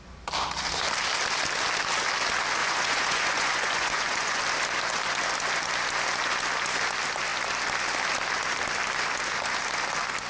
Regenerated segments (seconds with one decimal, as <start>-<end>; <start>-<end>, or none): 2.6-4.4